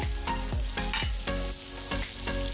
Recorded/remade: recorded